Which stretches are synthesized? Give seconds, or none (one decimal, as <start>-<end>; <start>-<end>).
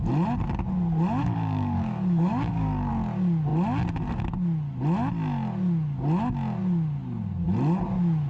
1.2-2.9